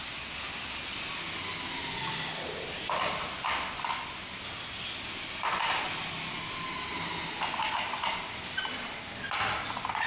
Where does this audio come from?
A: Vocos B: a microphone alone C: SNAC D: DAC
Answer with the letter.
B